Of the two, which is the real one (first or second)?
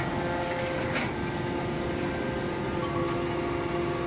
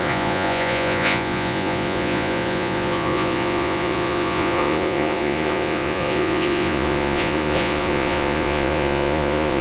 first